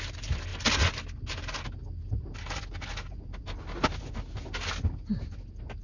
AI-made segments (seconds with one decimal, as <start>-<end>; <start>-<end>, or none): none